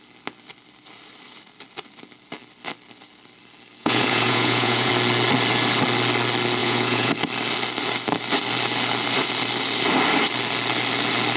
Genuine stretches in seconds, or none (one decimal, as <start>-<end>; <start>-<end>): 0.0-3.8; 4.9-6.6; 7.1-11.4